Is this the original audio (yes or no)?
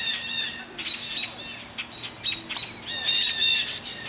yes